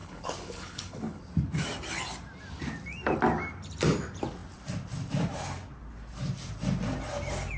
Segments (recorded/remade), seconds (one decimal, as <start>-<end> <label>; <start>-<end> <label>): 0.0-1.2 remade; 1.2-7.6 recorded